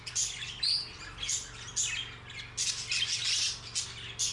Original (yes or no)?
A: yes